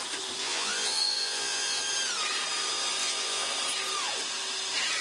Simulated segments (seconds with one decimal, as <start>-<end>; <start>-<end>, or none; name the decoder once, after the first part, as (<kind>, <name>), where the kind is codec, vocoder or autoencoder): 0.4-1.8 (vocoder, Vocos); 3.0-3.5